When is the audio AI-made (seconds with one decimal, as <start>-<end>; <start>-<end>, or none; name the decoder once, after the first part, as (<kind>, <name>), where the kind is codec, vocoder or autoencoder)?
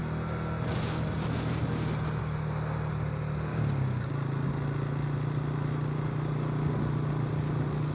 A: 3.5-4.1 (codec, DAC)